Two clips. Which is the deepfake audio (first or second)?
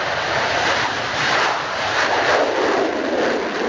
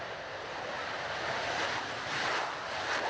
first